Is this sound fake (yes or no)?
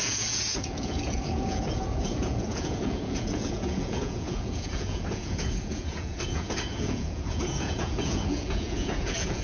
yes